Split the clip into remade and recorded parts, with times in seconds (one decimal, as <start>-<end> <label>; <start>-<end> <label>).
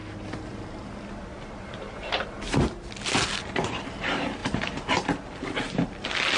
0.0-6.4 recorded